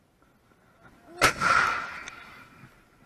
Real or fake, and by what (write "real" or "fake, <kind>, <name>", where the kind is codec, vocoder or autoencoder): real